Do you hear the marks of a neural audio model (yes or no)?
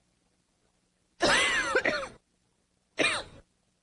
no